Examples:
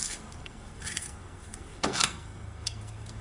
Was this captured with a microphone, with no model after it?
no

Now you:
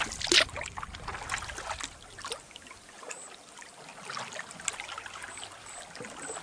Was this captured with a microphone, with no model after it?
yes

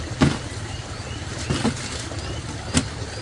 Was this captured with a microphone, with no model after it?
yes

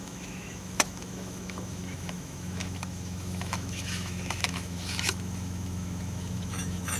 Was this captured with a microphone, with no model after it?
no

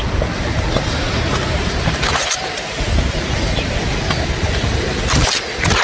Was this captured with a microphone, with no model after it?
yes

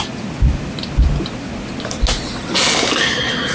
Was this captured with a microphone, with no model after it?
yes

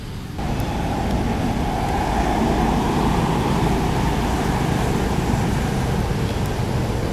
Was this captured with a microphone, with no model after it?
yes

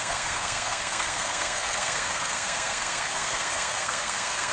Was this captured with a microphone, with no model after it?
no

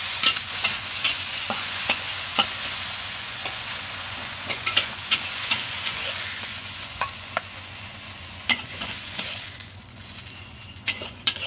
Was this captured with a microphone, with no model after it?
no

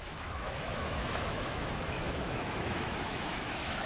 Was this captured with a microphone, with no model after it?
no